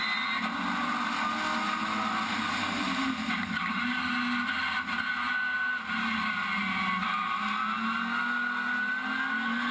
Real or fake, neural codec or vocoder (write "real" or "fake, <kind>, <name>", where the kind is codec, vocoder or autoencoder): real